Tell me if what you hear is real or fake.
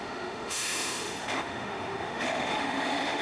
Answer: fake